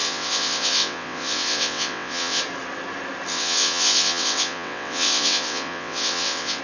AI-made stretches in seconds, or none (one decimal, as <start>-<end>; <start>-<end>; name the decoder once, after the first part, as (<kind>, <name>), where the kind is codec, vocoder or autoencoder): 0.0-2.4 (vocoder, WaveNeXt); 3.3-6.6